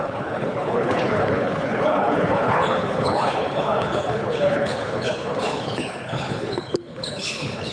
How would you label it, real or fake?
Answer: fake